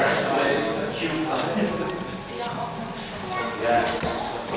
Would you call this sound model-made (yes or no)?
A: no